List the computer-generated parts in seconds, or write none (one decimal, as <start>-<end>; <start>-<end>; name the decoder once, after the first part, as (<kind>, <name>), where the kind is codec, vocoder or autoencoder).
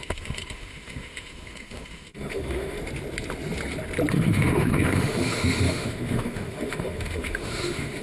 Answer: 0.0-2.8 (autoencoder, DAC-VAE); 4.1-8.0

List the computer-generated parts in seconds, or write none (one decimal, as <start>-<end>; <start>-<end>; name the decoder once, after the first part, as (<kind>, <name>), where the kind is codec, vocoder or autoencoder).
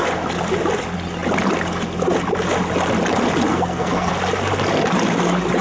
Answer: 3.5-4.1 (codec, SNAC)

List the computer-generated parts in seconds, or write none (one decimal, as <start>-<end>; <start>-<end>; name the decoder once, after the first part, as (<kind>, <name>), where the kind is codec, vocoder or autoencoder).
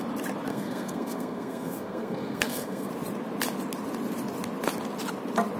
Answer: 0.5-2.9 (codec, SNAC)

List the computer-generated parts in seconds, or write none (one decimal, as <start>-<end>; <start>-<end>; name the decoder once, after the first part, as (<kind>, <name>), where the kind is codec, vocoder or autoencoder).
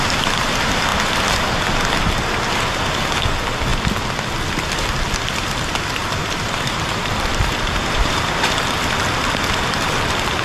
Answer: 6.2-8.2 (vocoder, BigVGAN v2)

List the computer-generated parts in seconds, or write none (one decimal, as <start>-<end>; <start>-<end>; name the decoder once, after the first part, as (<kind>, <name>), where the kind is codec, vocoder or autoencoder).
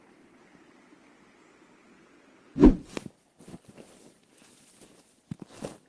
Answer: none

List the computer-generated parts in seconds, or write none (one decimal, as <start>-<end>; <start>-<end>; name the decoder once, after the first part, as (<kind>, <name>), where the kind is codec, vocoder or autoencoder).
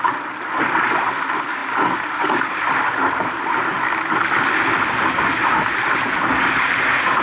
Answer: none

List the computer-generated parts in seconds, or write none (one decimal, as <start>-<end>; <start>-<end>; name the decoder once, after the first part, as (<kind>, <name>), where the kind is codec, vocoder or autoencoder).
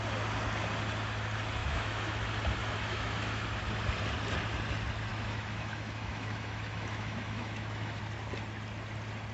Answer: 1.6-2.2 (autoencoder, DAC-VAE); 2.6-3.6; 5.1-8.0